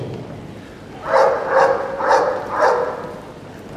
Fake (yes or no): no